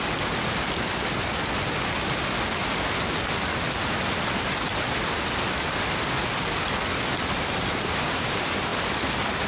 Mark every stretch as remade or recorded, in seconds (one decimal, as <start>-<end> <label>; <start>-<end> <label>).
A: 0.0-9.5 recorded